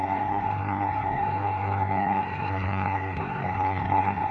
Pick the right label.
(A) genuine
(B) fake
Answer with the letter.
B